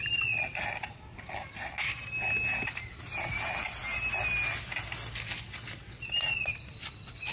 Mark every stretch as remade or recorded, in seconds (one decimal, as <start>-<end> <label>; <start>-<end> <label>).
0.0-7.3 recorded